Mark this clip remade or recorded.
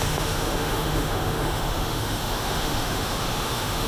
remade